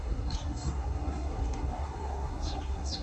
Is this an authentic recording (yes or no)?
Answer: no